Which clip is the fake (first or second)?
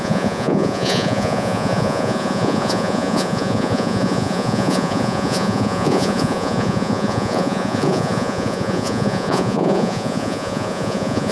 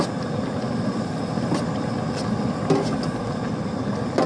first